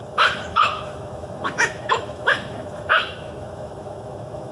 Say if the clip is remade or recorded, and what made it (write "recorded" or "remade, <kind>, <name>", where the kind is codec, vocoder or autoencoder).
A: remade, autoencoder, DAC-VAE